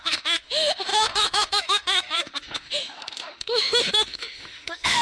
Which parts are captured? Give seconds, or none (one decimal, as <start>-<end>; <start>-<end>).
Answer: none